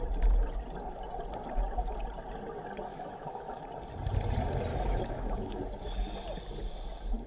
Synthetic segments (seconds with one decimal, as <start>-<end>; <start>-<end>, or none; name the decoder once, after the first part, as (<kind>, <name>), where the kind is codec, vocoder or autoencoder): 2.9-3.6 (autoencoder, DAC-VAE); 4.7-5.6